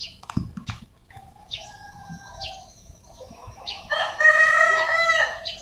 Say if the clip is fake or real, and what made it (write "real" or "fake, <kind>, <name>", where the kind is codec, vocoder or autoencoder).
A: fake, autoencoder, DAC-VAE